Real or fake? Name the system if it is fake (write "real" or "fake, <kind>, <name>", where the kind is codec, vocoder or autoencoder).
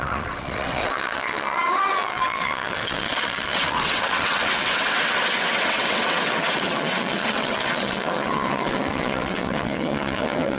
fake, vocoder, WaveNeXt